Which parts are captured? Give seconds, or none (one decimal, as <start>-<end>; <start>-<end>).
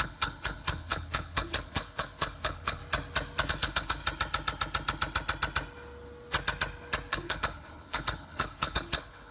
2.8-3.5; 4.0-7.1